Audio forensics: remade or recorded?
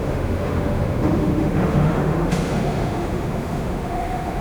remade